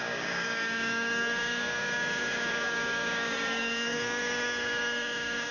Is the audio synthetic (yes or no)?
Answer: yes